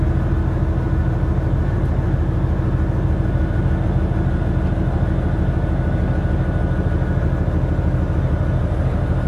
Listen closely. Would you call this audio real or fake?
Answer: real